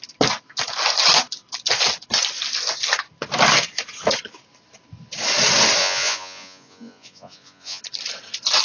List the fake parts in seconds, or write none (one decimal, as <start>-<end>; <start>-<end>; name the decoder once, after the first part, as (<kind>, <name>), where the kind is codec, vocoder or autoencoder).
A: 5.8-7.8 (vocoder, Vocos)